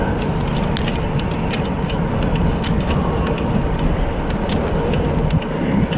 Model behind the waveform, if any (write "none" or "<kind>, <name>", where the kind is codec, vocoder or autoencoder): none